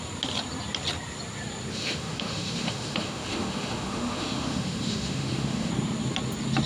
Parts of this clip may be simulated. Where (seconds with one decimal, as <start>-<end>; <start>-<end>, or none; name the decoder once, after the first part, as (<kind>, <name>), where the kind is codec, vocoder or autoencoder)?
1.7-5.7 (autoencoder, DAC-VAE)